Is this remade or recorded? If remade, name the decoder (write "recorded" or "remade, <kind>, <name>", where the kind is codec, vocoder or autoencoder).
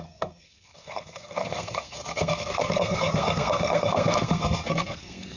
remade, codec, SNAC